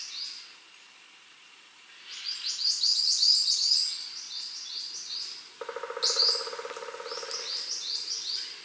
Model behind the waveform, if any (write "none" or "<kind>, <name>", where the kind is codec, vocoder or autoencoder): none